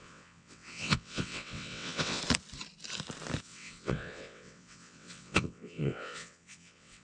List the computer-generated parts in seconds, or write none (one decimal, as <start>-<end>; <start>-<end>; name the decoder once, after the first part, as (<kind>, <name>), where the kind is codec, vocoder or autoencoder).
0.0-2.2 (vocoder, WaveNeXt); 3.4-7.0